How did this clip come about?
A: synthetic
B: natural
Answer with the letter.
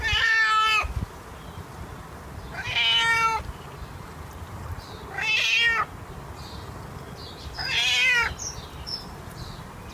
B